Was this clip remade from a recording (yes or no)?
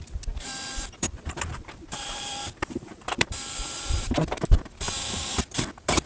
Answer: yes